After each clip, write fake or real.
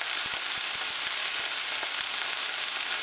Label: real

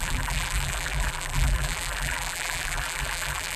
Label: fake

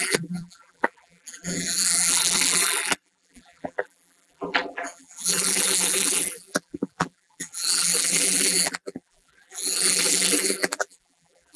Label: fake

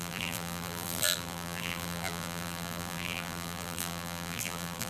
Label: fake